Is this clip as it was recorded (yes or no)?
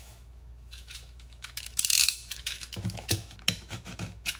no